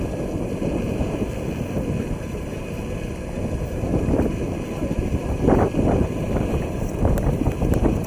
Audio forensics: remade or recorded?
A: remade